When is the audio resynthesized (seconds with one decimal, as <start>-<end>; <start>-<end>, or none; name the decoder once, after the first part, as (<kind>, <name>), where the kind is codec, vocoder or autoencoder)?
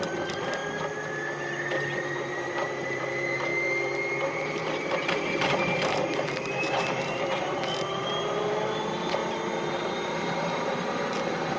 0.0-0.6 (vocoder, BigVGAN v2); 1.7-3.5; 4.3-9.2; 9.7-11.6